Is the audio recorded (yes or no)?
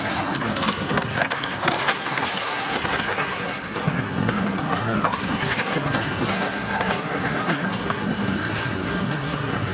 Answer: no